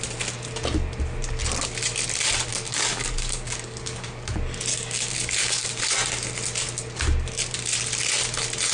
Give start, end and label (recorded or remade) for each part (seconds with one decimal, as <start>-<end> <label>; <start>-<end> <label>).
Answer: 0.0-2.5 recorded; 2.5-4.3 remade; 4.3-4.7 recorded; 4.7-5.8 remade; 5.8-8.7 recorded